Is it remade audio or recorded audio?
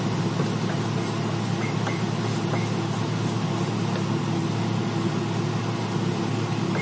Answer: recorded